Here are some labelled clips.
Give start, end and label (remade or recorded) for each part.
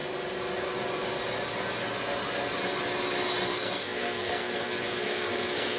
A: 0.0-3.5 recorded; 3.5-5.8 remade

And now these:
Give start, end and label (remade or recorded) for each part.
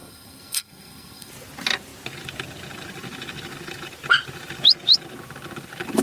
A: 0.0-1.3 remade; 1.3-6.0 recorded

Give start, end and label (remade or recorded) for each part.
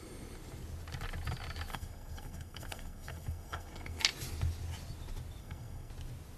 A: 0.0-1.7 recorded; 1.7-4.0 remade; 4.0-5.4 recorded; 5.4-5.9 remade; 5.9-6.4 recorded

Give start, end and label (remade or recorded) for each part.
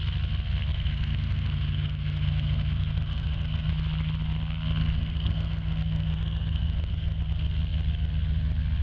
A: 0.0-0.7 recorded; 0.7-3.7 remade; 3.7-4.8 recorded; 4.8-7.2 remade; 7.2-8.8 recorded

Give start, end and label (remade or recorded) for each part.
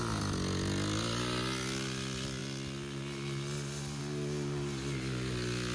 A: 0.0-5.7 recorded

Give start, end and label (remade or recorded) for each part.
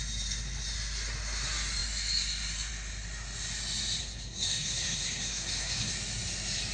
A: 0.0-4.0 recorded; 4.0-5.9 remade; 5.9-6.7 recorded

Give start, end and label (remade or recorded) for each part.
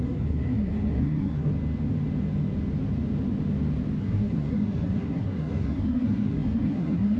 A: 0.0-1.5 remade; 1.5-4.0 recorded; 4.0-7.2 remade